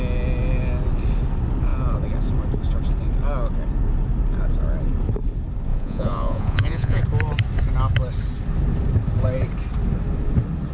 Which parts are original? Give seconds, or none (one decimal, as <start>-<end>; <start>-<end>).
0.0-5.7; 7.0-10.7